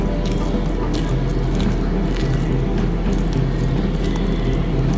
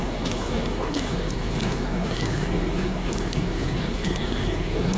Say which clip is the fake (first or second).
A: second